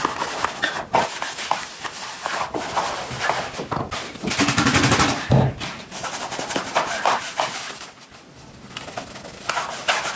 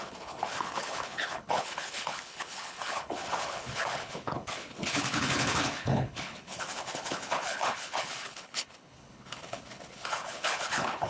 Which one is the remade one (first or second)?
second